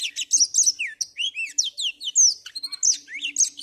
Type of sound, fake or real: real